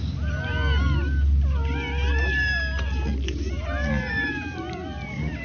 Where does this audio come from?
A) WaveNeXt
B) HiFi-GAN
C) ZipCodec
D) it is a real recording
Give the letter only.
D